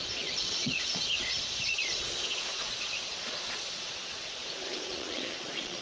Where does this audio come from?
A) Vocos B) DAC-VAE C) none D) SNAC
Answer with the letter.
A